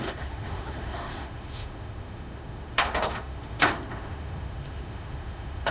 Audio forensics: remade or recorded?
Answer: remade